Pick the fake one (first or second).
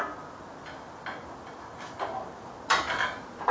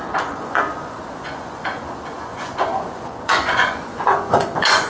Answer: second